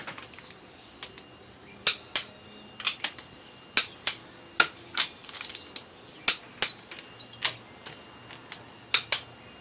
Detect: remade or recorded recorded